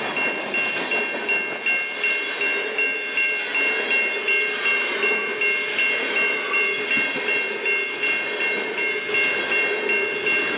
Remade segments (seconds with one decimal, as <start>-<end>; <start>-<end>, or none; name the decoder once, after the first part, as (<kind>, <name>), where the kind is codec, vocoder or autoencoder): none